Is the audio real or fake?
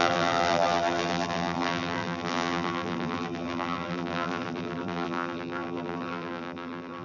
fake